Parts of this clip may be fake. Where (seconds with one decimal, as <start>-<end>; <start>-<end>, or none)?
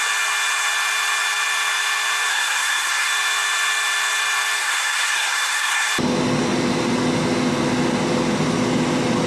2.3-3.1; 4.6-5.9